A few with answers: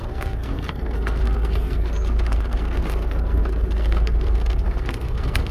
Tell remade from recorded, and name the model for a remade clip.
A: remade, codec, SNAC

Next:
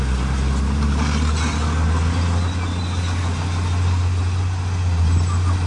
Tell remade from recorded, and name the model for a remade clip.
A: recorded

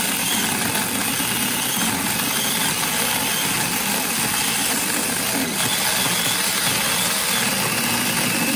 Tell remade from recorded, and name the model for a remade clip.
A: recorded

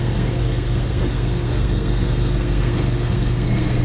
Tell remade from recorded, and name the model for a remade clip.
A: remade, codec, SNAC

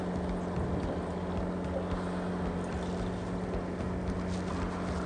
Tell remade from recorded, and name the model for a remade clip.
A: recorded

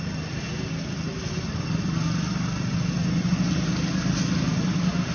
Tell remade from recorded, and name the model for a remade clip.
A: recorded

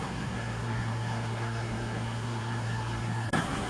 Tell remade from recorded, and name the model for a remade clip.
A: remade, codec, SNAC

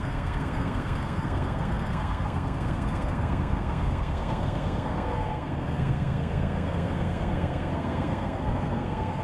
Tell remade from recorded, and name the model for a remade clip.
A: remade, codec, SNAC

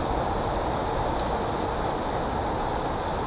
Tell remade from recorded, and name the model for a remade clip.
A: recorded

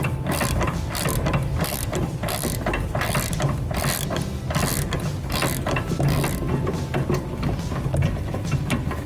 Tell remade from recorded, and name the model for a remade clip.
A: recorded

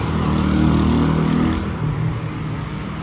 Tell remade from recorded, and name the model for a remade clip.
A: recorded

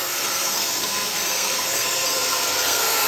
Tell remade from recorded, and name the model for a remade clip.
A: remade, codec, SNAC